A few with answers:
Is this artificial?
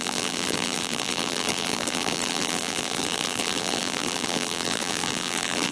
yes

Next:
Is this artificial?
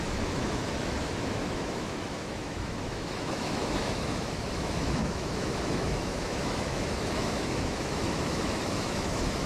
yes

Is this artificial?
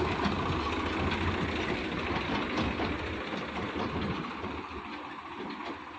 no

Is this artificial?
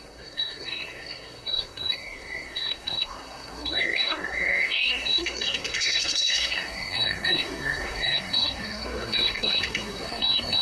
yes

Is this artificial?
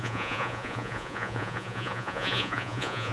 yes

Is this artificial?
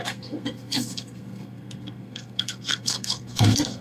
yes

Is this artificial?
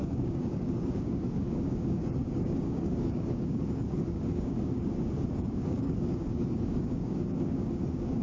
yes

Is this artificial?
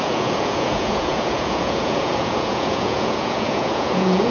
yes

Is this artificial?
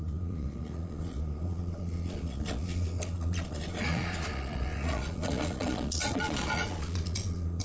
yes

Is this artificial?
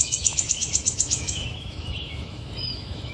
yes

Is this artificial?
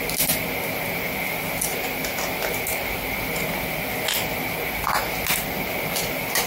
no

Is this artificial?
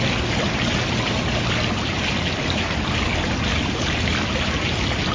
no